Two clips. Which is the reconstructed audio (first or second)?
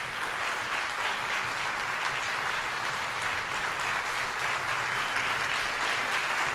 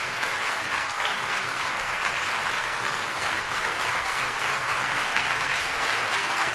second